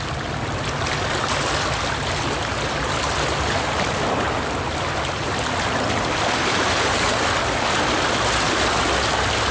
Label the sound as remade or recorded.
recorded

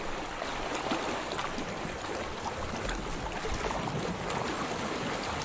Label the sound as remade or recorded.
recorded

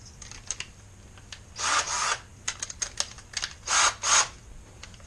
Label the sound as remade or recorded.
recorded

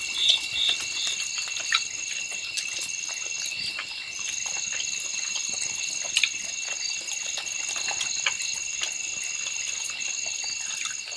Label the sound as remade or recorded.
recorded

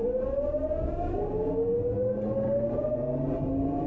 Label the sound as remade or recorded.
recorded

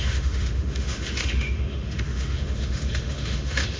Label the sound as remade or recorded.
remade